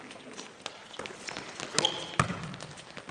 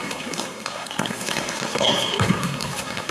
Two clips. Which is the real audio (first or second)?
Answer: first